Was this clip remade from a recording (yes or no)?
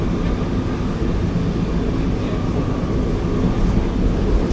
no